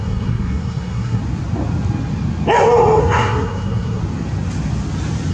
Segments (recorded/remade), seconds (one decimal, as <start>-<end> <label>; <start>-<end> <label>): 0.0-1.2 remade; 1.2-3.0 recorded; 3.0-4.0 remade; 4.0-5.3 recorded